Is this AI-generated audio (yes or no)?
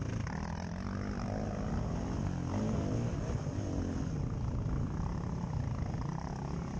no